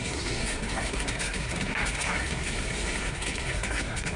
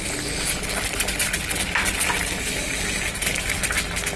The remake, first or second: first